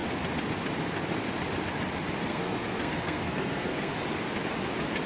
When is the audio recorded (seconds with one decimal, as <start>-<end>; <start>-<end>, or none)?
0.0-2.3; 3.9-5.1